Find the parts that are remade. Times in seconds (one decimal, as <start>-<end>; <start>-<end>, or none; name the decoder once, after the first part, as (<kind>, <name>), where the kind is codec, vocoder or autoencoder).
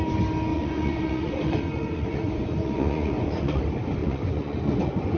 0.5-3.6 (vocoder, Vocos); 4.0-5.2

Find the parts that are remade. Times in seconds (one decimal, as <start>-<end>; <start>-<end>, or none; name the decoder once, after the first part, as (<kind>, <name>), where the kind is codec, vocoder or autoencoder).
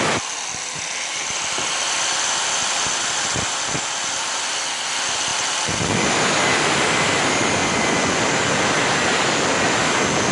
7.6-8.2 (vocoder, Vocos)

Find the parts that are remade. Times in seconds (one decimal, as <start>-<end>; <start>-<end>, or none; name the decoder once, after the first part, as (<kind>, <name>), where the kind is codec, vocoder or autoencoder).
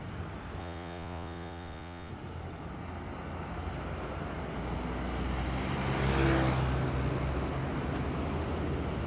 0.6-2.1 (vocoder, Vocos)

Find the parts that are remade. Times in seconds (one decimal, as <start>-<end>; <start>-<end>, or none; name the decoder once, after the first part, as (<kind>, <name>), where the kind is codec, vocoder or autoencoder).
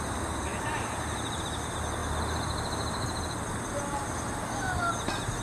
none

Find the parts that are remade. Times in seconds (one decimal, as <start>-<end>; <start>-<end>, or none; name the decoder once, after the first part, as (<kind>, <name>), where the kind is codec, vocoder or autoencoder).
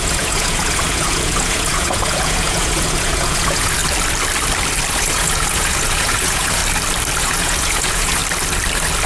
0.0-3.8 (vocoder, Vocos); 4.9-6.6; 7.2-8.2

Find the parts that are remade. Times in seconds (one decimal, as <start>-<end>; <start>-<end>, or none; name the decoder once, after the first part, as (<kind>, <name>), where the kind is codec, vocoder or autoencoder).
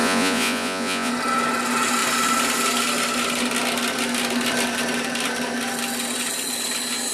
0.0-1.1 (vocoder, Vocos)